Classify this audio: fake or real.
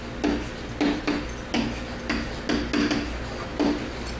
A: real